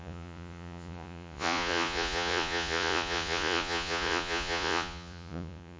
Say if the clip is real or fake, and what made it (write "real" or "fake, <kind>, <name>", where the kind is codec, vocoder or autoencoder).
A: fake, vocoder, Vocos